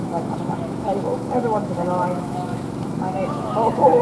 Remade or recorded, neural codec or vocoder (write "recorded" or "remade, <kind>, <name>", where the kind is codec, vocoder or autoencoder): remade, autoencoder, DAC-VAE